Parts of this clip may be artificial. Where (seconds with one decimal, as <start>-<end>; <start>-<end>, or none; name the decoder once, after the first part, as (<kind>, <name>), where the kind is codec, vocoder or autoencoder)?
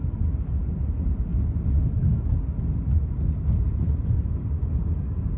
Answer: 0.6-1.3 (vocoder, BigVGAN v2); 3.6-5.4